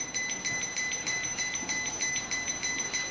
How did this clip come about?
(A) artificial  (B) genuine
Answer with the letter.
B